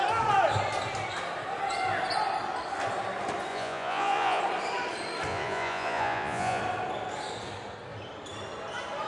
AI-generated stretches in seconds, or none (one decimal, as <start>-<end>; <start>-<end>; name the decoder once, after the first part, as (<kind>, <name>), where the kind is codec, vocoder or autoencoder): 3.5-4.4 (vocoder, Vocos); 5.3-6.6